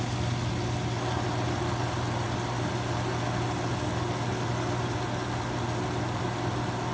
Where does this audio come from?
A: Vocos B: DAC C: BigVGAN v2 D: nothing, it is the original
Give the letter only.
D